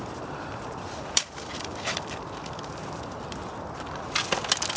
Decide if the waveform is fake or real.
fake